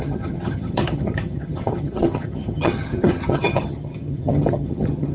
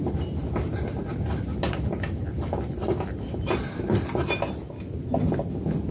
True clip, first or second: second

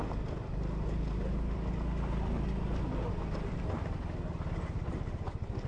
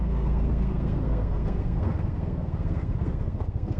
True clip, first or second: first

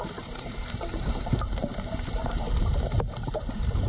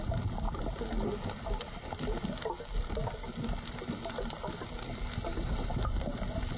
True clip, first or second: second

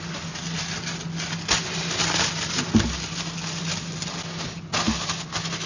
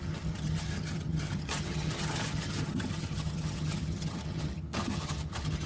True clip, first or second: first